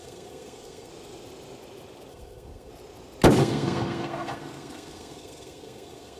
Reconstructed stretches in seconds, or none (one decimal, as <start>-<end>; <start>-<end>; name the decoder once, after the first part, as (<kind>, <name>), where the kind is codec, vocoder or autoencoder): 0.0-0.9 (codec, SNAC); 2.1-2.7; 3.4-6.2